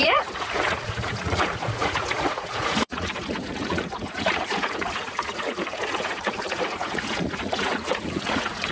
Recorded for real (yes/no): no